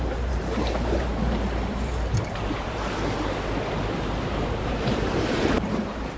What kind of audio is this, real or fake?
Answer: fake